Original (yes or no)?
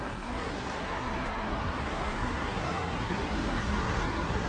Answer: no